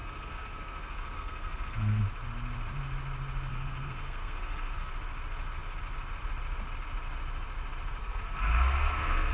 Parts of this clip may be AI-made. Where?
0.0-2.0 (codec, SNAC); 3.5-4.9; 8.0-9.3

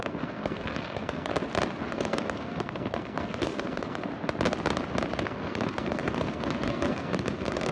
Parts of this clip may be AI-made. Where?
0.0-1.3 (codec, SNAC); 1.9-4.1; 5.2-7.7

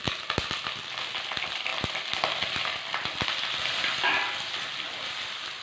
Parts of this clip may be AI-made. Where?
none

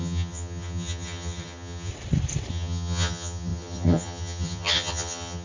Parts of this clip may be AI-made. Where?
0.0-1.9 (vocoder, HiFi-GAN); 2.5-5.4